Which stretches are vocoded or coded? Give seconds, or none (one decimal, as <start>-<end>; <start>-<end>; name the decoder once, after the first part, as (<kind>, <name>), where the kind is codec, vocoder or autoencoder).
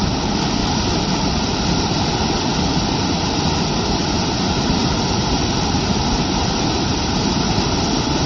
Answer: 0.6-1.8 (vocoder, BigVGAN v2); 4.8-7.8